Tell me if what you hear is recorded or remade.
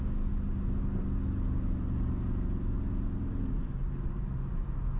recorded